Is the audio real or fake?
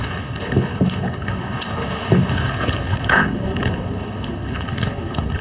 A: fake